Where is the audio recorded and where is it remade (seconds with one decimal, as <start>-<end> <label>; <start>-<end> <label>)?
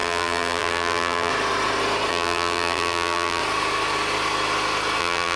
0.0-1.3 remade; 1.3-2.1 recorded; 2.1-3.4 remade; 3.4-5.0 recorded; 5.0-5.4 remade